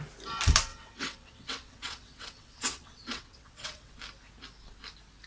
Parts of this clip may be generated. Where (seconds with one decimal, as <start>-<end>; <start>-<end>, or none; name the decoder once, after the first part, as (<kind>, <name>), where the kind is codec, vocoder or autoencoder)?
0.7-3.9 (vocoder, WaveNeXt)